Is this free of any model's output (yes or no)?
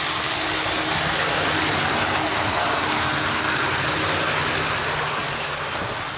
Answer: yes